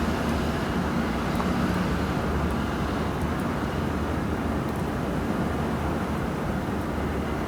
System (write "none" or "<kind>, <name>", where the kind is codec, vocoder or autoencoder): none